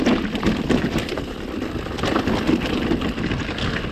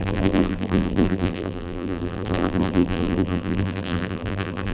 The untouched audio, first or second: first